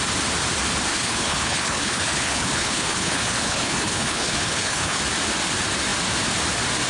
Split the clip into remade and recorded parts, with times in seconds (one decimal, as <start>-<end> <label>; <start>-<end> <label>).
0.0-0.9 recorded; 0.9-5.0 remade; 5.0-6.9 recorded